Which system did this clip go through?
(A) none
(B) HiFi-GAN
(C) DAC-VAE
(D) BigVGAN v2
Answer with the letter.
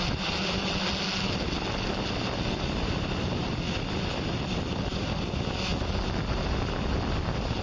A